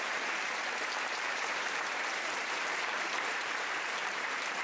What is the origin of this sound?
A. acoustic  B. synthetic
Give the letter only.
B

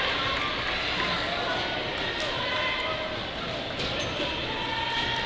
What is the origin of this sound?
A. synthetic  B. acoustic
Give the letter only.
B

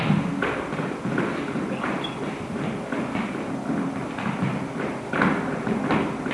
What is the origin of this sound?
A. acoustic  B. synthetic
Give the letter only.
A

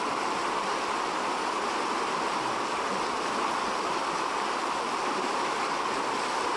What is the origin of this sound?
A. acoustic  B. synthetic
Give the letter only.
A